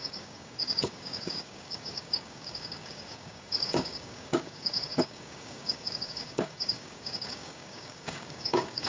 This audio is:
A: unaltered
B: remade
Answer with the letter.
B